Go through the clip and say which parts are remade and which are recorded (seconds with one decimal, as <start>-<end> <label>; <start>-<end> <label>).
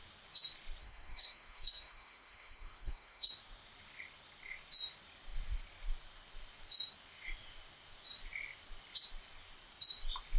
0.0-0.8 recorded; 0.8-3.3 remade; 3.3-10.4 recorded